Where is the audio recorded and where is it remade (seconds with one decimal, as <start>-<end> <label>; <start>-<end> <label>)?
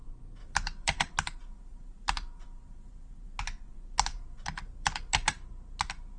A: 0.0-0.4 recorded; 0.4-3.4 remade; 3.4-4.1 recorded; 4.1-5.5 remade; 5.5-6.2 recorded